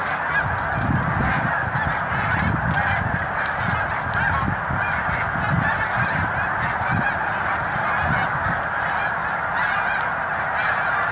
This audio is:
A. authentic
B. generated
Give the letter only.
A